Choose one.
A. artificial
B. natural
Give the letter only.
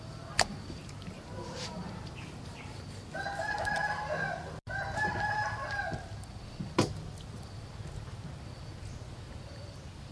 B